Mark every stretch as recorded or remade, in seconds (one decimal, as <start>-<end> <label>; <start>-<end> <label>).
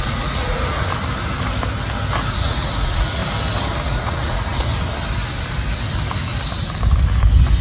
0.0-0.9 remade; 0.9-2.3 recorded; 2.3-3.2 remade; 3.2-3.8 recorded; 3.8-4.7 remade; 4.7-7.6 recorded